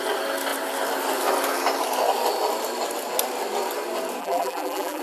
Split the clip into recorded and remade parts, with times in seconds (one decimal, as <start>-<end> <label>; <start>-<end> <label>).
0.0-4.2 recorded; 4.2-5.0 remade